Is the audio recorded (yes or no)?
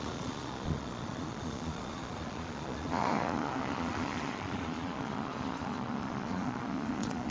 no